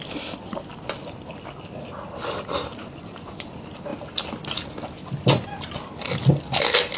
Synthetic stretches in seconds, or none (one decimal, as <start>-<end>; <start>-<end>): 2.8-3.5